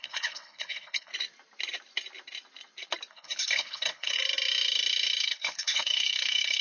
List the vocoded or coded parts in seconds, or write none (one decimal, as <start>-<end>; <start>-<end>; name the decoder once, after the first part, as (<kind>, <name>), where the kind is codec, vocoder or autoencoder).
0.0-1.1 (codec, HILCodec); 3.1-4.2; 5.2-6.6